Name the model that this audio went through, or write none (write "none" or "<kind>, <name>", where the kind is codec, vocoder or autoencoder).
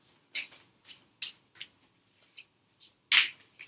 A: none